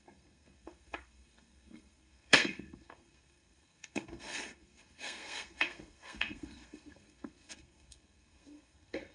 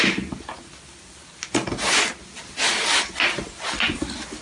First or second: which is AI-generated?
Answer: first